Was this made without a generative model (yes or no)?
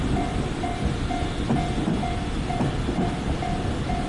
yes